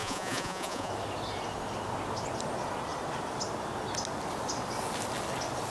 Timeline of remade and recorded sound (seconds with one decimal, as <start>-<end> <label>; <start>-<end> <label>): 0.0-0.9 remade; 0.9-5.7 recorded